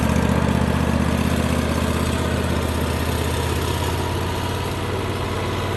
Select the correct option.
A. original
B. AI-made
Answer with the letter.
A